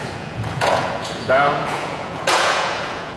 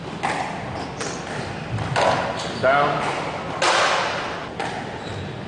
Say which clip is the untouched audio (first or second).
second